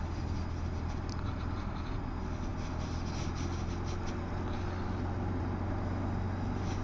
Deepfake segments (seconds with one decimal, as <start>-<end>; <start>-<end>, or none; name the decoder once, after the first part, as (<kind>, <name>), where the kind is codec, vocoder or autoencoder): none